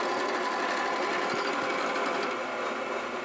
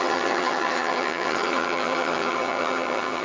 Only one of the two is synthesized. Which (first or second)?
second